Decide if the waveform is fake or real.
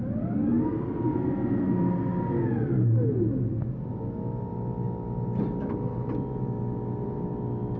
real